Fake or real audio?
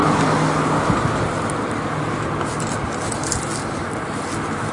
real